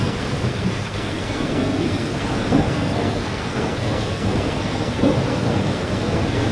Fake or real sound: fake